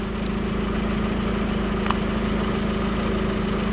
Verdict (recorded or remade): recorded